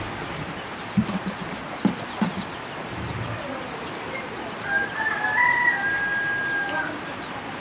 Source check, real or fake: real